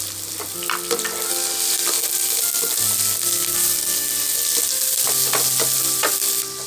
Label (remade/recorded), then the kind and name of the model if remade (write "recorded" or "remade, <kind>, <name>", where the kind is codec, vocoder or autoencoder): recorded